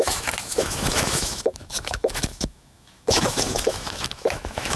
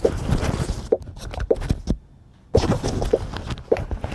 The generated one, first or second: first